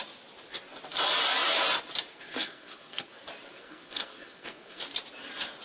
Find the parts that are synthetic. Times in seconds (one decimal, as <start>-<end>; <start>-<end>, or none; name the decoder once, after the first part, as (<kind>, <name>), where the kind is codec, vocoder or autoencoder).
2.1-3.1 (codec, SNAC); 3.5-4.8